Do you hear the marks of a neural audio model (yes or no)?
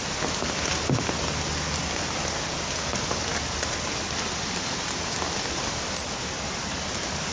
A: no